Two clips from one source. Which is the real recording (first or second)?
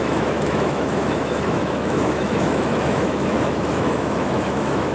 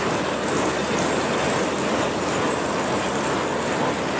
second